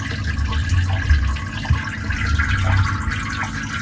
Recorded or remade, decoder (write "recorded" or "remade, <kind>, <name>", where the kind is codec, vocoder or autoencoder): recorded